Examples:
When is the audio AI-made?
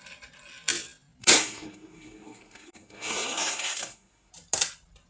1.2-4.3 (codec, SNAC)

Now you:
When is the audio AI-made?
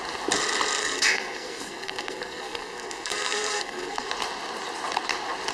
0.8-4.1 (codec, SNAC)